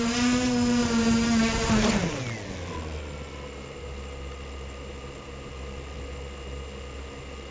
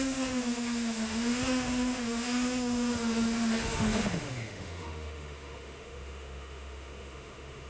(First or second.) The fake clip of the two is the second